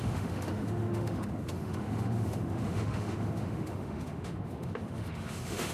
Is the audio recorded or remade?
remade